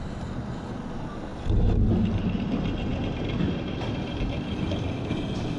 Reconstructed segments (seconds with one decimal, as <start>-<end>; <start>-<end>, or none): none